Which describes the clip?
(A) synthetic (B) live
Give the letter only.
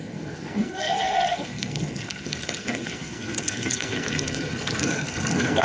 A